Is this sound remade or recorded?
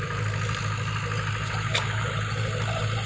recorded